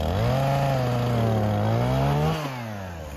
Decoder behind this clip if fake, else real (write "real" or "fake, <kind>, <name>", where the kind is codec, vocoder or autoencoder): real